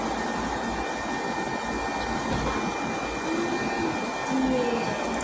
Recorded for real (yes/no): yes